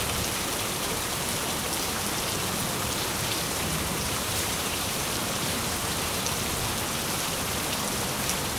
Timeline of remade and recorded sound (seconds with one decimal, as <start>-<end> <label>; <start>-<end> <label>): 0.0-3.1 recorded; 3.1-6.1 remade; 6.1-8.6 recorded